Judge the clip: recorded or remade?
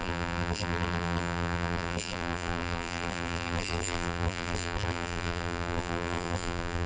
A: remade